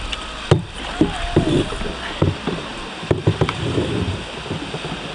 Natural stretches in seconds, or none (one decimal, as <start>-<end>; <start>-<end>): 0.0-5.1